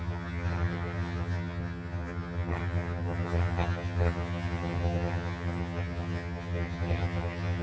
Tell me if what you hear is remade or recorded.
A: remade